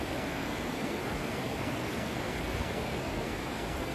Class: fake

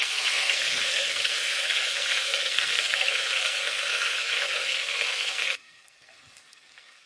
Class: fake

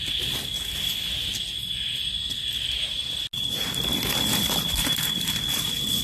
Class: real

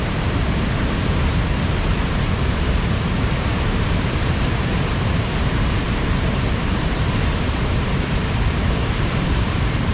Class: fake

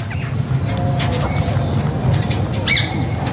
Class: real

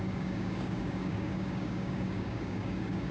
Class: fake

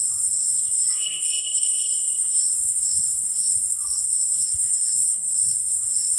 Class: fake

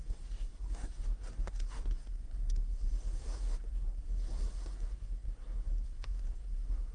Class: fake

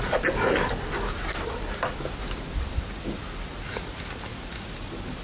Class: real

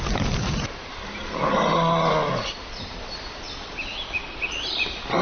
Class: real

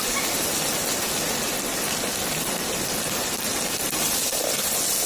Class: real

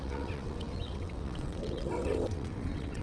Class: fake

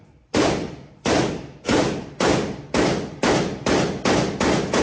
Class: fake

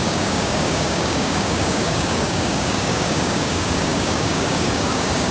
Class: fake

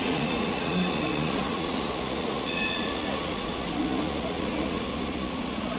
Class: fake